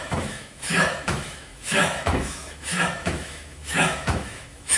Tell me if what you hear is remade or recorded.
remade